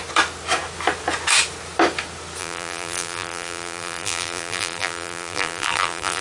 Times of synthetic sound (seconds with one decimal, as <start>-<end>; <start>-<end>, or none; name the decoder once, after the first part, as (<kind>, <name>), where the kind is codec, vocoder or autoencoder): 2.4-6.2 (vocoder, BigVGAN v2)